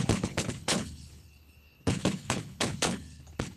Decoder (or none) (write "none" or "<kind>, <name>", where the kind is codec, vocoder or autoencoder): codec, HILCodec